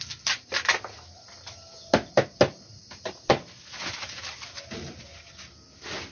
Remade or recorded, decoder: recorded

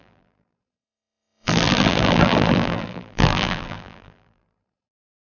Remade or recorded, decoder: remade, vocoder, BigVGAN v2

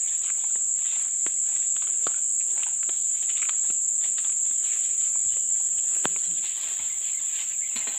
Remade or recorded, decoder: recorded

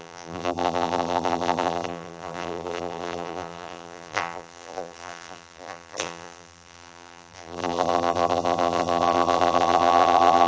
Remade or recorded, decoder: remade, vocoder, BigVGAN v2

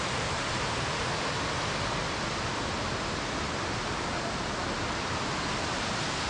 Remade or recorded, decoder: recorded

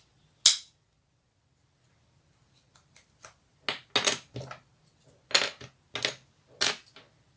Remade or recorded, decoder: recorded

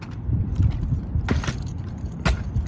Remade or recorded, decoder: recorded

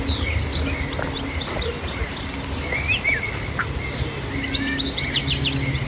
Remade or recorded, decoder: recorded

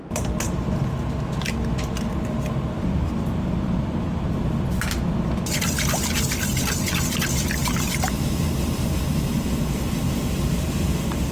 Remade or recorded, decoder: recorded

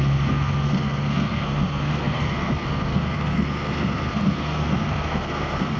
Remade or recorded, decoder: remade, codec, SNAC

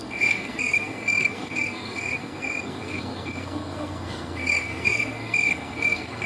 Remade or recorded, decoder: remade, codec, SNAC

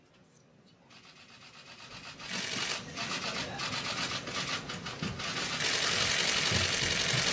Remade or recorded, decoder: recorded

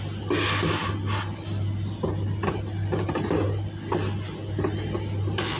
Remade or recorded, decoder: recorded